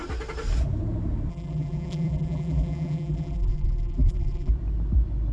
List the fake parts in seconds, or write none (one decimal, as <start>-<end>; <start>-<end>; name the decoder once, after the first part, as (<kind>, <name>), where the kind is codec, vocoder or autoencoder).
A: 1.3-4.5 (vocoder, BigVGAN v2)